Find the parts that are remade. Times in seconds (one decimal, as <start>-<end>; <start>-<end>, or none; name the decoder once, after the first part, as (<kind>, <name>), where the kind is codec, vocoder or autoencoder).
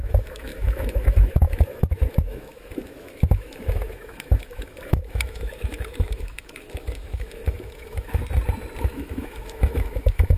0.0-8.2 (autoencoder, DAC-VAE); 8.8-10.4